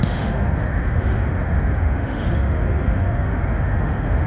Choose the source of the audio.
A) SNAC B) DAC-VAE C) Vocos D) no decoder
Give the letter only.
B